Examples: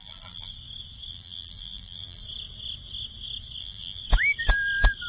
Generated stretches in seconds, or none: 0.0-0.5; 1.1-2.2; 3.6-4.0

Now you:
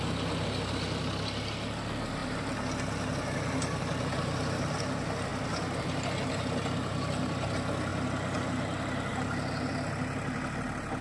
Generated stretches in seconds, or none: 2.2-4.7

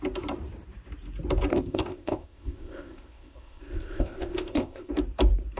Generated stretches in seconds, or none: 1.5-4.9

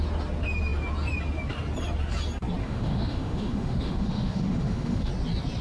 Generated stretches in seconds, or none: 2.6-5.1

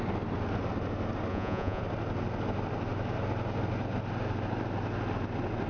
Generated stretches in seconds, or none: 1.3-1.8

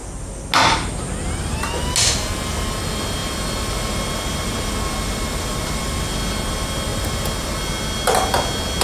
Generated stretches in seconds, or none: 3.2-6.2

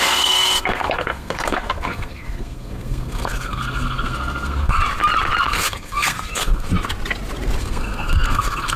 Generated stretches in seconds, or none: 0.0-4.8; 5.4-6.7; 7.6-8.8

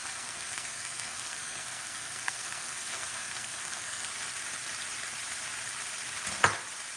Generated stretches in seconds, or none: 0.0-4.1